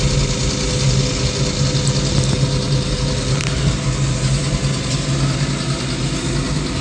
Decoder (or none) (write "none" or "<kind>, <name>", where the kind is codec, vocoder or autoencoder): none